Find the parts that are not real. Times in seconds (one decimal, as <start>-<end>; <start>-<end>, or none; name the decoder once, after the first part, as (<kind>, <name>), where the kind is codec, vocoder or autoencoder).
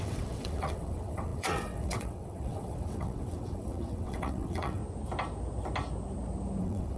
0.0-4.8 (vocoder, WaveNeXt); 6.6-7.0